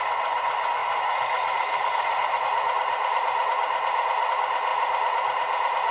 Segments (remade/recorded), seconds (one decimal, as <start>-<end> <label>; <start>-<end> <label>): 0.0-0.8 recorded; 0.8-4.3 remade; 4.3-4.7 recorded; 4.7-5.9 remade